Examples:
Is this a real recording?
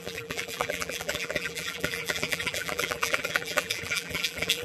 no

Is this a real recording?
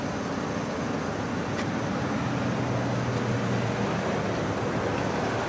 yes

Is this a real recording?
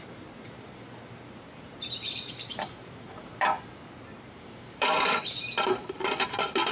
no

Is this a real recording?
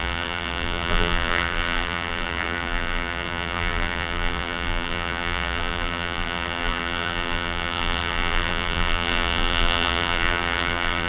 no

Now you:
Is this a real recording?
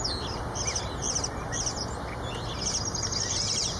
yes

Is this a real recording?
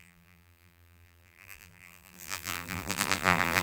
no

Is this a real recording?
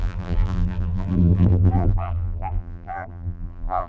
no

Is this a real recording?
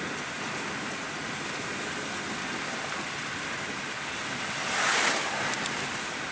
yes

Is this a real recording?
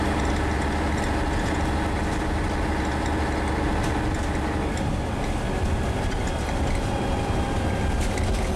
yes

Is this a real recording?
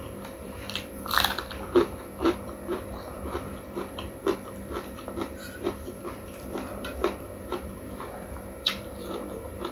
no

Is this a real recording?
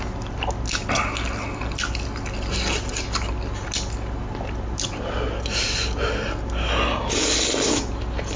yes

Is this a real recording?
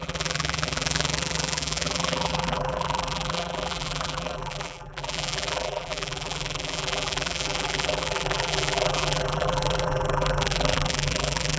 no